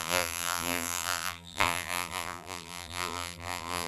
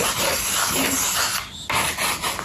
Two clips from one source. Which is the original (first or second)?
second